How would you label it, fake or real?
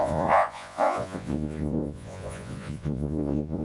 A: fake